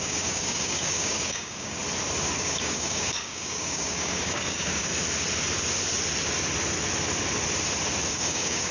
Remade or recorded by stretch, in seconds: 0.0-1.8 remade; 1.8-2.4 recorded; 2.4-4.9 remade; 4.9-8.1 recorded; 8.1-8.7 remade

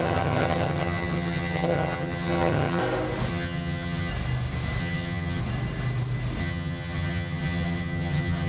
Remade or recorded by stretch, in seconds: 0.0-2.8 remade; 2.8-3.3 recorded; 3.3-4.1 remade; 4.1-4.8 recorded; 4.8-5.4 remade; 5.4-6.4 recorded; 6.4-8.5 remade

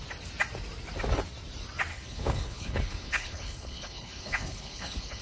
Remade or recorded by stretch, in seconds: 0.0-1.9 recorded; 1.9-5.2 remade

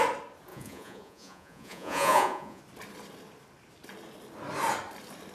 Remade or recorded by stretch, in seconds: 0.0-0.5 recorded; 0.5-2.6 remade; 2.6-5.3 recorded

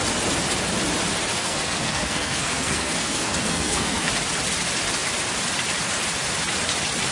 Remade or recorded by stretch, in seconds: 0.0-1.3 recorded; 1.3-4.1 remade; 4.1-7.1 recorded